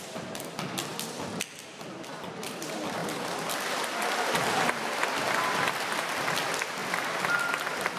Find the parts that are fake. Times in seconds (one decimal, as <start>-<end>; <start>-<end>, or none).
none